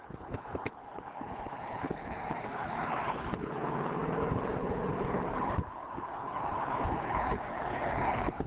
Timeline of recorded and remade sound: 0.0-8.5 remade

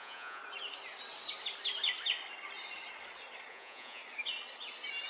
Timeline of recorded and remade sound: 0.0-0.4 remade; 0.4-3.5 recorded; 3.5-4.0 remade; 4.0-5.1 recorded

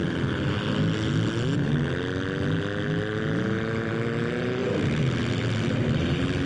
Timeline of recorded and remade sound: 0.0-6.5 recorded

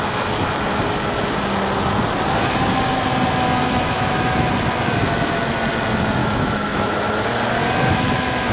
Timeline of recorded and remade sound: 0.0-3.6 recorded; 3.6-4.5 remade; 4.5-6.2 recorded; 6.2-6.9 remade; 6.9-8.5 recorded

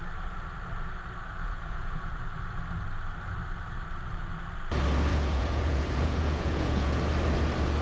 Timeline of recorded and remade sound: 0.0-1.4 recorded; 1.4-2.1 remade; 2.1-5.1 recorded; 5.1-7.0 remade; 7.0-7.8 recorded

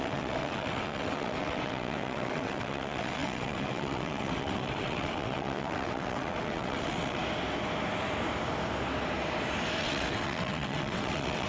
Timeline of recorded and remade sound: 0.0-7.2 remade; 7.2-9.8 recorded; 9.8-11.5 remade

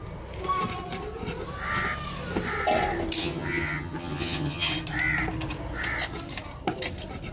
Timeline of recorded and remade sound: 0.0-3.2 recorded; 3.2-4.7 remade; 4.7-7.3 recorded